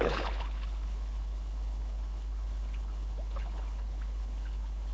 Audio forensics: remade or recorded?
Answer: remade